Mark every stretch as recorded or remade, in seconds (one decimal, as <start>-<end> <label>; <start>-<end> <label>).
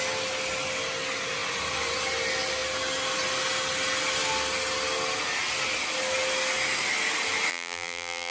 0.0-7.5 recorded; 7.5-8.3 remade